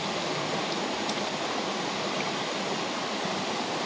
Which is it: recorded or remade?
recorded